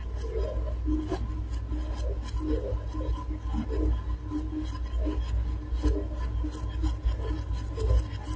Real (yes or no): yes